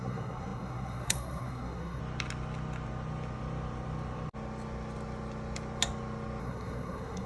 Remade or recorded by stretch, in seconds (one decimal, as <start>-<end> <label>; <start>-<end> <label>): 0.0-2.0 remade; 2.0-6.4 recorded; 6.4-7.3 remade